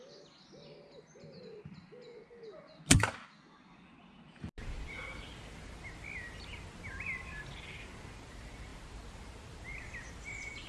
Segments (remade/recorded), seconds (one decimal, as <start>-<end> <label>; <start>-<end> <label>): 0.0-10.7 recorded